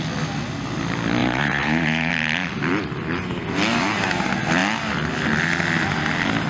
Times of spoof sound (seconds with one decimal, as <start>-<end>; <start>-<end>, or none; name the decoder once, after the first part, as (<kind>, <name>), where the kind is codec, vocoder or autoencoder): 1.2-2.1 (vocoder, Vocos)